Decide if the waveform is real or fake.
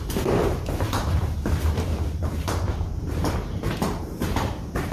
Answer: fake